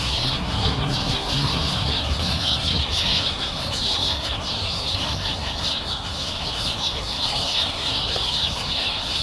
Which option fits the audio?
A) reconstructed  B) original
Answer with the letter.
A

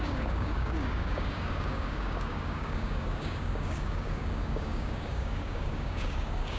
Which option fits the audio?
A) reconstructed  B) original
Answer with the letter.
A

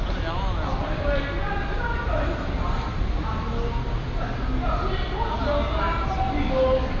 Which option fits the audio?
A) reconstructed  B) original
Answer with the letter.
B